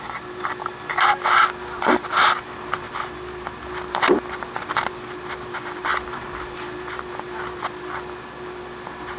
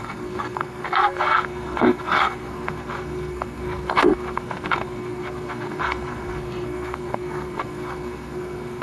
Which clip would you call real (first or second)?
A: first